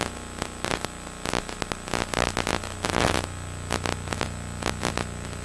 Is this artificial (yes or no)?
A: no